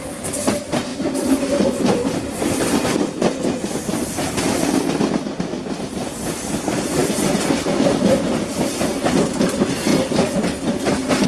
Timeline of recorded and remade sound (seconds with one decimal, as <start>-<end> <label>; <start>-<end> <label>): 0.0-0.9 recorded; 0.9-3.4 remade; 3.4-7.0 recorded; 7.0-8.2 remade; 8.2-11.3 recorded